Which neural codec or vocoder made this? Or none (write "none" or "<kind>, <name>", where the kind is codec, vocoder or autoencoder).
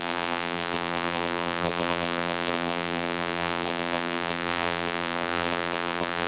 vocoder, BigVGAN v2